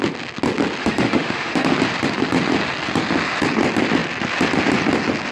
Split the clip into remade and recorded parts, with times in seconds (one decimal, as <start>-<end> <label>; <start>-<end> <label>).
0.0-0.8 recorded; 0.8-1.7 remade; 1.7-5.3 recorded